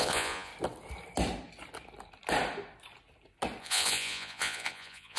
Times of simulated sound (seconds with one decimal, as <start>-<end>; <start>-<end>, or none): 0.0-0.5; 3.6-5.2